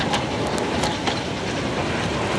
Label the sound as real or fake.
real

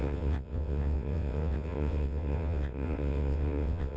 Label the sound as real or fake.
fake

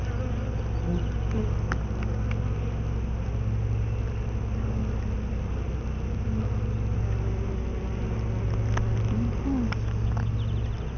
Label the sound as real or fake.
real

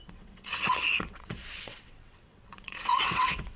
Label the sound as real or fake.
fake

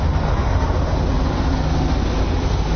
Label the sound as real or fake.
real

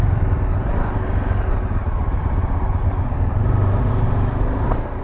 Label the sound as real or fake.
real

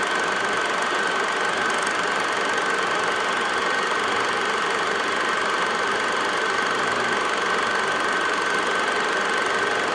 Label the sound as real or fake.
real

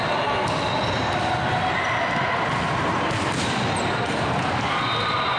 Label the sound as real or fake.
real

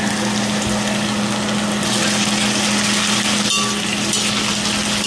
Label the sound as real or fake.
real